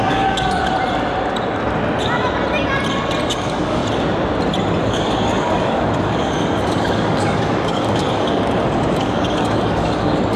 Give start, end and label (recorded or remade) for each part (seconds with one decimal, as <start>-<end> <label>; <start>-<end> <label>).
0.0-0.6 remade; 0.6-3.3 recorded; 3.3-3.8 remade; 3.8-4.8 recorded; 4.8-10.4 remade